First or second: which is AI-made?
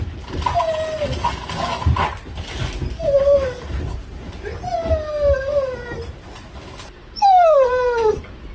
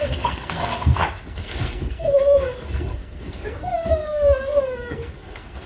second